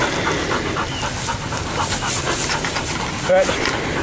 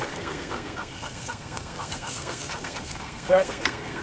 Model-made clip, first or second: second